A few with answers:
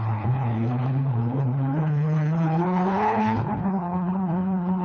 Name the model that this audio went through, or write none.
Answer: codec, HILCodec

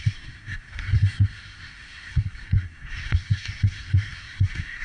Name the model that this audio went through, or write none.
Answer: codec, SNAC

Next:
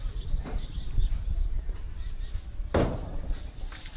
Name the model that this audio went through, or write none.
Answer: none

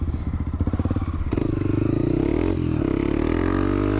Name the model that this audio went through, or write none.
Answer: none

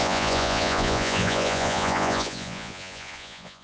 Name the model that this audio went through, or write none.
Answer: vocoder, Vocos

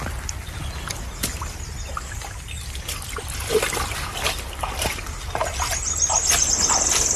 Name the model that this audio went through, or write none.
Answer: none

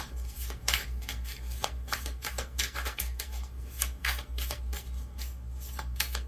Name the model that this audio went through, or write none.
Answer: codec, SNAC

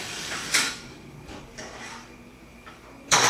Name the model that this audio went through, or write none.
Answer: codec, DAC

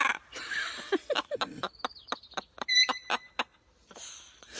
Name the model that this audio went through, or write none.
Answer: none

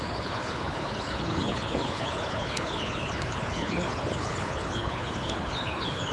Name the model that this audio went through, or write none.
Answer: codec, HILCodec